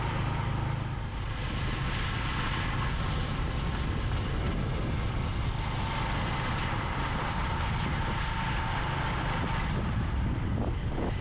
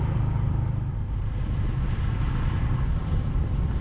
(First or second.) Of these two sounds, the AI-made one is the second